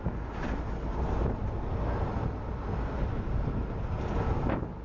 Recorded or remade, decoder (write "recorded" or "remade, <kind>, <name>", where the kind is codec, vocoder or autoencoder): recorded